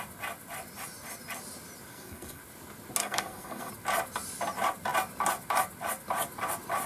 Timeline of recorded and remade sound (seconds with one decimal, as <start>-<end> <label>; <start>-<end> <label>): 0.0-1.9 recorded; 1.9-2.4 remade; 2.4-3.0 recorded; 3.0-3.7 remade; 3.7-6.9 recorded